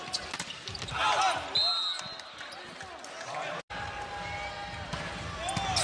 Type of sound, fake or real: real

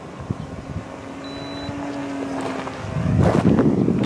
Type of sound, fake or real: real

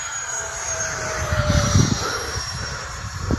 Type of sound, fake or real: fake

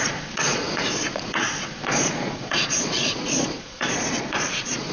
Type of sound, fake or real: fake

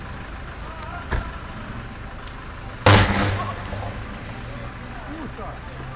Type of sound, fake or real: real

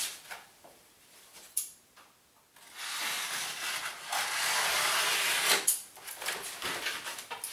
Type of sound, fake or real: real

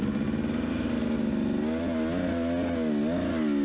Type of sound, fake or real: real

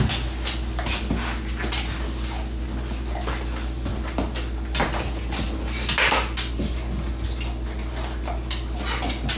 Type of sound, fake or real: real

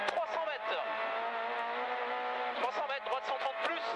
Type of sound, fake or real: real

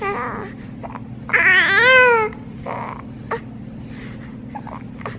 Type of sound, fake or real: real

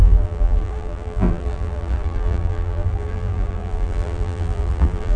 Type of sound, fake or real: fake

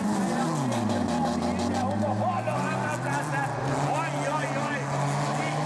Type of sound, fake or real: real